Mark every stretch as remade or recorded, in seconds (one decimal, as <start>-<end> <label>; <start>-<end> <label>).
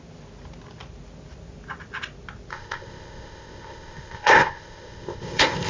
0.0-2.5 recorded; 2.5-5.7 remade